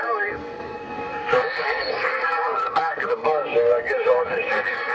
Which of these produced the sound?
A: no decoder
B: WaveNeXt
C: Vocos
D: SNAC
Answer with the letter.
D